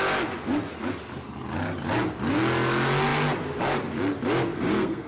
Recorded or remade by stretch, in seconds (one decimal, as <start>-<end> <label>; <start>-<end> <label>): 0.0-4.5 recorded; 4.5-5.1 remade